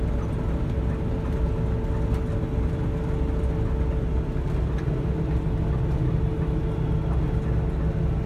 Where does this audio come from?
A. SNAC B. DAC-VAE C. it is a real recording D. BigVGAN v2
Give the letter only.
C